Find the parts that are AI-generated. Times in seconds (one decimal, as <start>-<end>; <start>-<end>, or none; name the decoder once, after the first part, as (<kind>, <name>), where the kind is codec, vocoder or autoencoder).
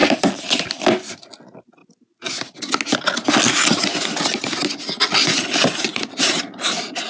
0.0-1.3 (vocoder, BigVGAN v2); 5.9-7.1